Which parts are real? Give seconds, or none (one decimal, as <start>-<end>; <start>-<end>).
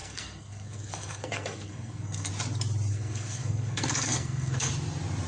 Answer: 2.3-2.9; 4.7-5.3